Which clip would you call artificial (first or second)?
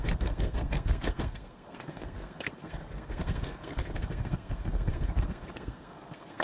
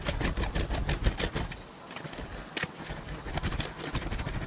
first